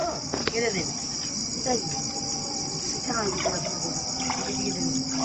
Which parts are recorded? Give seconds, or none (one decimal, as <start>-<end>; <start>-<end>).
0.0-5.2